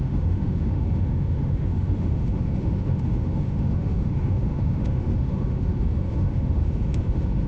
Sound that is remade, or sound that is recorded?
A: remade